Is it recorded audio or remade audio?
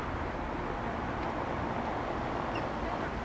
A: recorded